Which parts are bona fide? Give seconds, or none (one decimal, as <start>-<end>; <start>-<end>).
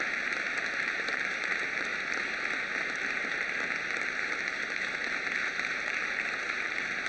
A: 1.9-5.5